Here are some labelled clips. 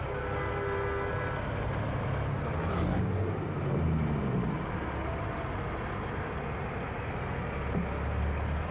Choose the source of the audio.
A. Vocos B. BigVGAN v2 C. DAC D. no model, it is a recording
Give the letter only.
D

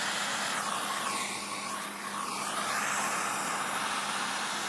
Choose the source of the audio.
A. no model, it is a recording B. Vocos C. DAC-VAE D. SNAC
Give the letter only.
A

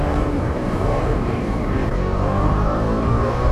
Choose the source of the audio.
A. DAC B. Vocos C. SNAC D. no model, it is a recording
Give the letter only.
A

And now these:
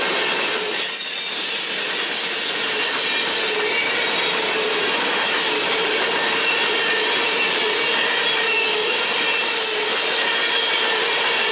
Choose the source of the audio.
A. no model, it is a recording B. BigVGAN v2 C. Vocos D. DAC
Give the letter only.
A